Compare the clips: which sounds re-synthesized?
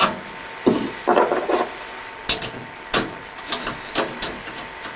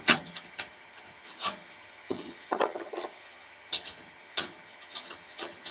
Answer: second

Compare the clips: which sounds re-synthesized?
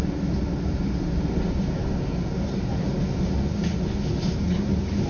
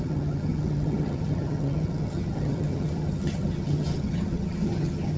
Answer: second